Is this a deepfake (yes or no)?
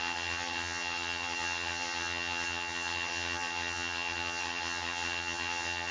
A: yes